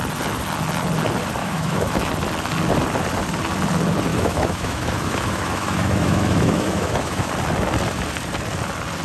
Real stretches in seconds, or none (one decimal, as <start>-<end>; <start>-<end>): 0.0-1.4; 2.1-4.1; 7.3-9.0